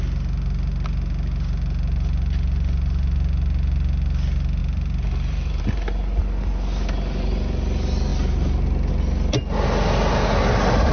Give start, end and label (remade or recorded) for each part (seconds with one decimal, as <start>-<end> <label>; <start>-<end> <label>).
0.0-4.6 recorded; 4.6-5.6 remade; 5.6-10.9 recorded